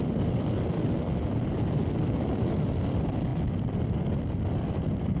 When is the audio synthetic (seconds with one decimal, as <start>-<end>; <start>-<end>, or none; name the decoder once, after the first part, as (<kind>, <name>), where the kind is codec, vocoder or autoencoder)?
none